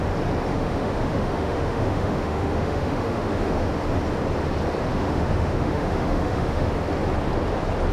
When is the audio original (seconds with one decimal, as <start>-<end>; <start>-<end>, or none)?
0.0-0.5; 3.7-4.9; 6.7-7.9